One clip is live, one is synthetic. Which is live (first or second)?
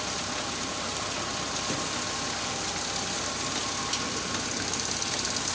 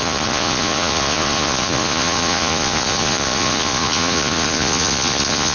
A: first